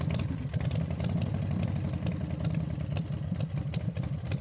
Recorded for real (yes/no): yes